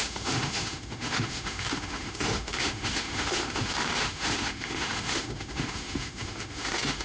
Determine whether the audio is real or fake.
fake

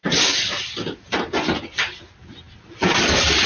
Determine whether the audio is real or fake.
real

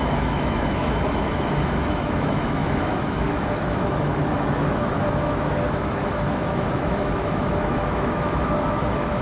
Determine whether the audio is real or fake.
fake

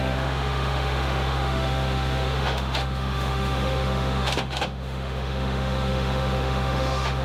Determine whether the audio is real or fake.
fake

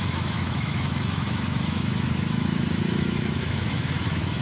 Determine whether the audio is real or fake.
fake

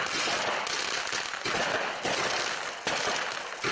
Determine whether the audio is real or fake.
real